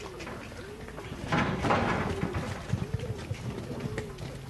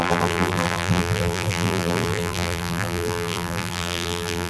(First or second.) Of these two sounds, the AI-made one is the second